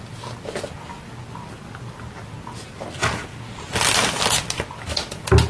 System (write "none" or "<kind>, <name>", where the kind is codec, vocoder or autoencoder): none